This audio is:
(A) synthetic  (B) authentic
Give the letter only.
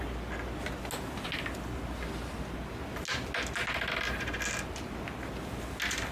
B